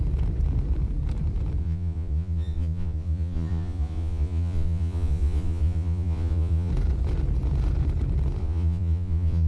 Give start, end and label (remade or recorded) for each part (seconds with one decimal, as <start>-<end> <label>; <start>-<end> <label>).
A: 0.0-1.6 recorded; 1.6-6.7 remade; 6.7-8.4 recorded; 8.4-9.5 remade